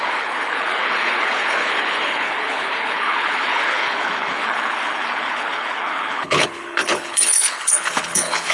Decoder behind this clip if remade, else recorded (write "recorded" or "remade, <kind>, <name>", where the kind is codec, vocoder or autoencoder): remade, codec, HILCodec